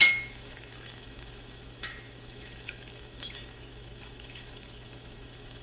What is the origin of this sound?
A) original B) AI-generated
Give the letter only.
B